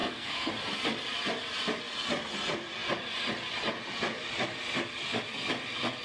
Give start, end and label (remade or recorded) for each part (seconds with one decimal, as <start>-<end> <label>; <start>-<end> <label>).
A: 0.0-0.5 remade; 0.5-6.0 recorded